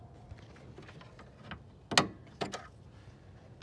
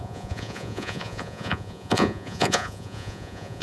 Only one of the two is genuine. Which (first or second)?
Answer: first